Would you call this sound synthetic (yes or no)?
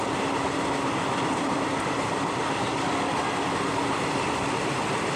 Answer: no